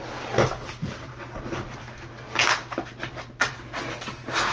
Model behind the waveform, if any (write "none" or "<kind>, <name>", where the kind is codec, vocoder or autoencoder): none